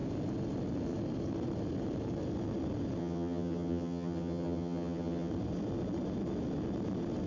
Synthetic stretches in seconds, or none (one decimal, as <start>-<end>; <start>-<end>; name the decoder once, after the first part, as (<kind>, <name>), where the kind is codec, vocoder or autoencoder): 3.0-5.3 (vocoder, HiFi-GAN)